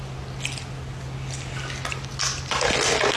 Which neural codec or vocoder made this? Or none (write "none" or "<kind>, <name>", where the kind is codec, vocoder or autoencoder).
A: none